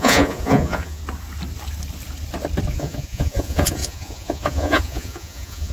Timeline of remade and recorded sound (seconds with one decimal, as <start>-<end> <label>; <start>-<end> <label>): 0.0-1.0 remade; 1.0-2.7 recorded; 2.7-5.7 remade